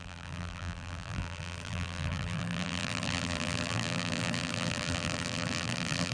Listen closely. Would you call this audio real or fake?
fake